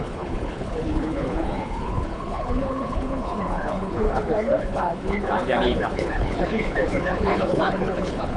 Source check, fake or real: fake